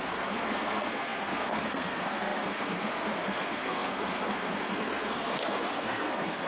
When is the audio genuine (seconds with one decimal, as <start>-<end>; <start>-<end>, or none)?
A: none